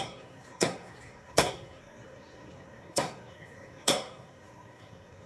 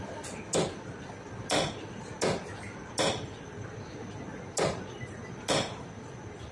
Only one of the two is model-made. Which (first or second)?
first